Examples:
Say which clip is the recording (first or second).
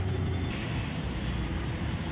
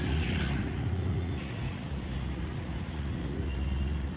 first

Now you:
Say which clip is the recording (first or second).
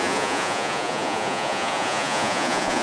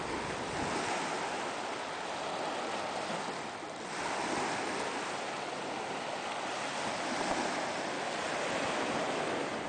second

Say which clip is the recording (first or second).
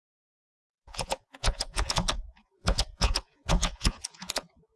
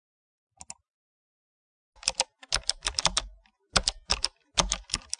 second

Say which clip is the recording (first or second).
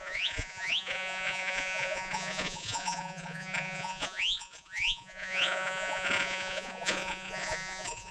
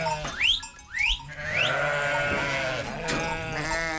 second